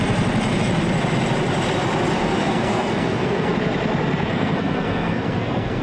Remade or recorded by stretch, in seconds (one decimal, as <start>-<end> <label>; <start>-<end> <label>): 0.0-2.2 recorded; 2.2-3.5 remade; 3.5-4.3 recorded; 4.3-5.8 remade